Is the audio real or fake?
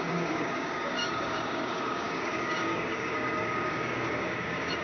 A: fake